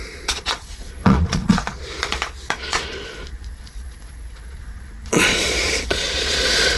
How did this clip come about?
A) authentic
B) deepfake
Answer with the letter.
B